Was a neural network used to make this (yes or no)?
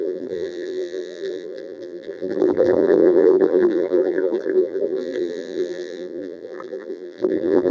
yes